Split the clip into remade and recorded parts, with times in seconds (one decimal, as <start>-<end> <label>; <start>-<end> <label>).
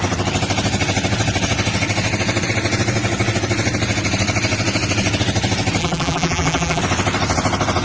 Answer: 0.0-5.8 recorded; 5.8-6.8 remade; 6.8-7.8 recorded